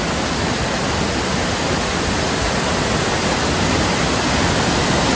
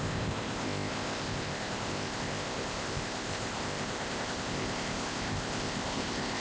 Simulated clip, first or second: second